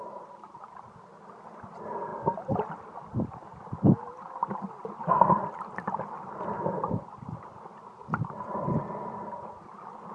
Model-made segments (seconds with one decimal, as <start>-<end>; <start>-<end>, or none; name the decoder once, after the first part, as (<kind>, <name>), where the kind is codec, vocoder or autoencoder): none

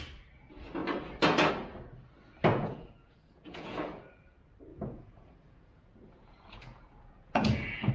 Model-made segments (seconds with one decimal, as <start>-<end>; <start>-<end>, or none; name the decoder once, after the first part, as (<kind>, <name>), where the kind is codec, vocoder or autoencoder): 2.5-4.0 (vocoder, Vocos); 4.7-7.9

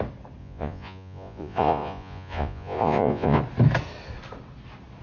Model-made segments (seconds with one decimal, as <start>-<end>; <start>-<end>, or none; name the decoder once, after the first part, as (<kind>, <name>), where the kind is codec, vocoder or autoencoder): 0.4-3.4 (vocoder, Vocos)